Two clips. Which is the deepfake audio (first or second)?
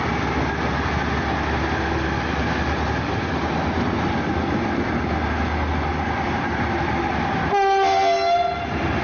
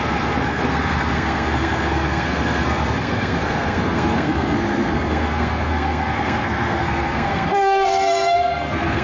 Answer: second